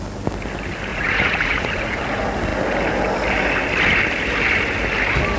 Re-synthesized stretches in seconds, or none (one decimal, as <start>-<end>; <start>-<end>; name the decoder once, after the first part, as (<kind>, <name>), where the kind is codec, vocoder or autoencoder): 0.9-2.0 (vocoder, Vocos)